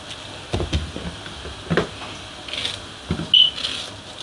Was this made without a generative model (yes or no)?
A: yes